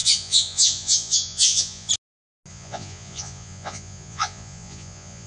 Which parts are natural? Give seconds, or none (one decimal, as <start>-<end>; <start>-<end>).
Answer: 1.9-2.5